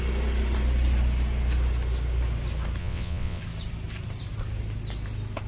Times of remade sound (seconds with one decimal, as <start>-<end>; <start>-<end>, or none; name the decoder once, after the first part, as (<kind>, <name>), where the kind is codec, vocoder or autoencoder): 2.8-3.4 (vocoder, WaveNeXt)